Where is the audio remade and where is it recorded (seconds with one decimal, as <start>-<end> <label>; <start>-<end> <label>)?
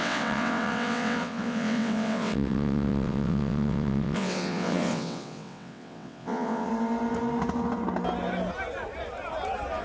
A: 0.0-6.7 remade; 6.7-9.8 recorded